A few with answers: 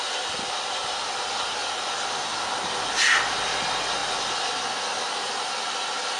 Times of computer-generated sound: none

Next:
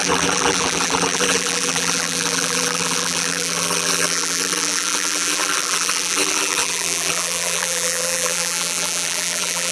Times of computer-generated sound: 0.0-9.7 (vocoder, BigVGAN v2)

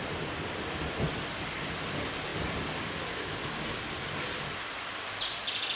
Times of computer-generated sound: none

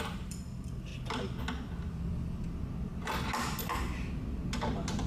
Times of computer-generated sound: none

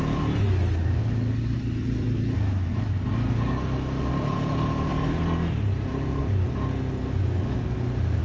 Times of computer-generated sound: none